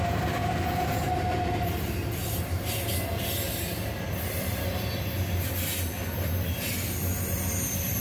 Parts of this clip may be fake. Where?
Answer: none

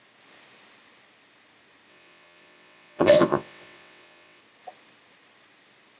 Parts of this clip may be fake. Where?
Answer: 1.9-4.4